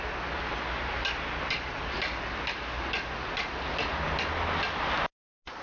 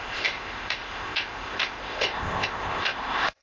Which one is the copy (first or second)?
second